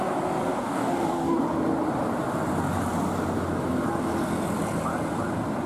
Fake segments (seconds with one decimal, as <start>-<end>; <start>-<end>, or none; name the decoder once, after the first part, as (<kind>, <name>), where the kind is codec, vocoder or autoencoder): 0.5-1.4 (codec, DAC)